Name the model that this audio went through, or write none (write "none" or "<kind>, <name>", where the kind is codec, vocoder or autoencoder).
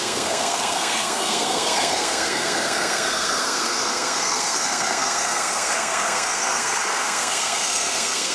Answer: codec, SNAC